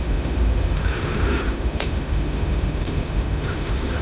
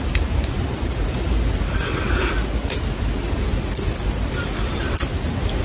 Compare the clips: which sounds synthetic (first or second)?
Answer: first